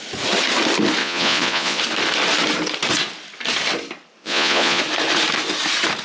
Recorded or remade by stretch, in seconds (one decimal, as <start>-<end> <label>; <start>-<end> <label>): 0.0-1.0 recorded; 1.0-1.8 remade; 1.8-4.2 recorded; 4.2-4.8 remade; 4.8-6.0 recorded